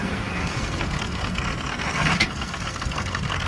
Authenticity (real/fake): fake